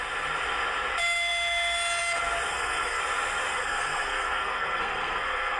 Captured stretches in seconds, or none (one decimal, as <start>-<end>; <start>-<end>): 0.0-2.5; 3.0-3.5